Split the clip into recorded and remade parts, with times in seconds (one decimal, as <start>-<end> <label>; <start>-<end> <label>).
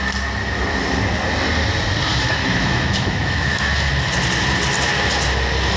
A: 0.0-2.1 recorded; 2.1-3.9 remade; 3.9-5.8 recorded